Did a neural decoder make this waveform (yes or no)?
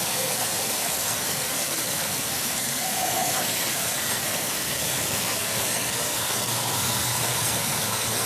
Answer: yes